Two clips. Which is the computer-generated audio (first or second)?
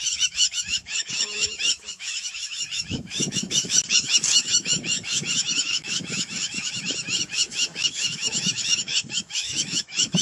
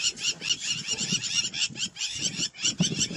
first